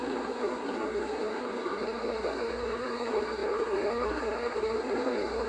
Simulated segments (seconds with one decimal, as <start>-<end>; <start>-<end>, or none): 0.0-5.5